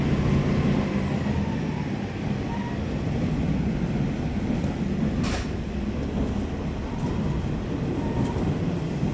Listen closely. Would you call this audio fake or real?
real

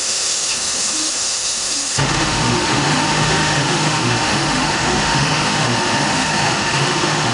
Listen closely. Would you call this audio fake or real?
fake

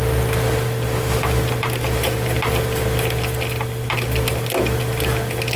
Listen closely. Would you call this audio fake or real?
real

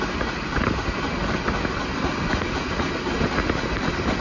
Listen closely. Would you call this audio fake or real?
real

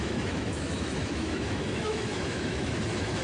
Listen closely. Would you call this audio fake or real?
fake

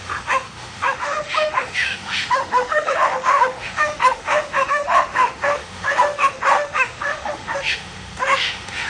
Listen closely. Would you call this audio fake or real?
fake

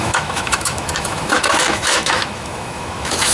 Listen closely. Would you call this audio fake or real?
fake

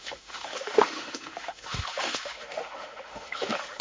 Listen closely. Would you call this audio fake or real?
fake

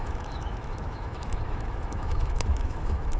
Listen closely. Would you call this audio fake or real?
fake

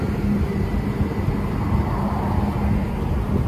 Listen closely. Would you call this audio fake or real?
real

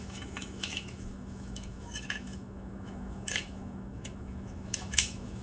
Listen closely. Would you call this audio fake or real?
fake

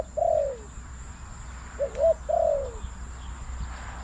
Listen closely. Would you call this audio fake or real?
real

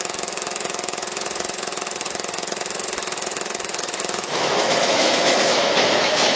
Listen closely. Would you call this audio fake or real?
fake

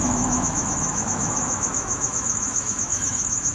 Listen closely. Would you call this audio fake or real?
fake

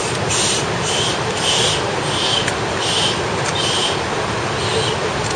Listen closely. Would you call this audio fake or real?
real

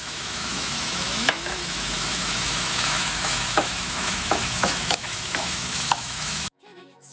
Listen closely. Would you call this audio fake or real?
fake